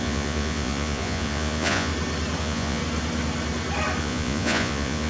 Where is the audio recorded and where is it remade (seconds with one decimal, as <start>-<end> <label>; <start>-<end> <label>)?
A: 0.0-1.9 remade; 1.9-2.4 recorded; 2.4-2.8 remade; 2.8-4.0 recorded; 4.0-5.1 remade